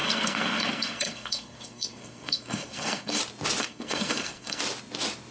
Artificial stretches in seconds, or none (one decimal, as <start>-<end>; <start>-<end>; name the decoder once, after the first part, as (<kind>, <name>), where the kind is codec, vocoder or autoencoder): 0.0-3.2 (codec, SNAC); 3.6-4.6